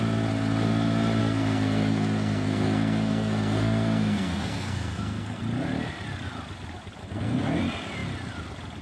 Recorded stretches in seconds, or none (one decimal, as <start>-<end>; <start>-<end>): 0.0-1.2; 5.4-7.0; 7.6-8.8

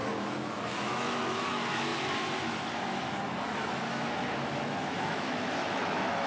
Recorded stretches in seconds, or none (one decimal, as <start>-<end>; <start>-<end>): none

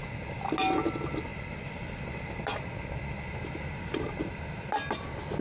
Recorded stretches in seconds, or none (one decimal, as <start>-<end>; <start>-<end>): 0.0-5.4

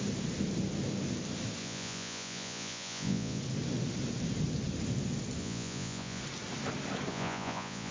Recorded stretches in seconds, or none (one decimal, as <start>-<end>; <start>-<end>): 0.0-1.6; 3.4-5.4; 6.2-7.1